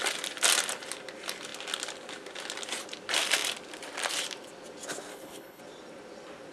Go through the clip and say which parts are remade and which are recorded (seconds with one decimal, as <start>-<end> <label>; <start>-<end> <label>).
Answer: 0.0-5.1 recorded; 5.1-5.6 remade; 5.6-6.5 recorded